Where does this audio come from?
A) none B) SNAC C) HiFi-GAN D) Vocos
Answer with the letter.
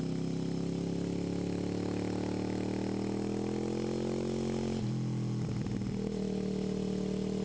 A